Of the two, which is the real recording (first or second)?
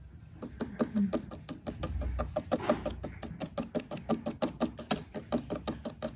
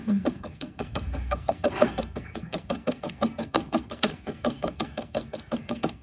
first